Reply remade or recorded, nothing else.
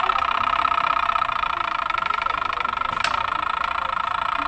recorded